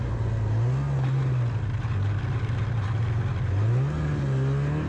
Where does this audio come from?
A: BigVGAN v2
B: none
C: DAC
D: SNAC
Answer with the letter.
B